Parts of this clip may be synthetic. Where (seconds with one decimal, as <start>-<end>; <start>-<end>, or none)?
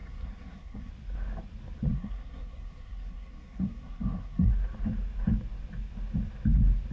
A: 0.0-0.9; 1.9-4.5